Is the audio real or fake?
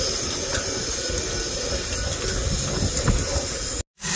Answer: real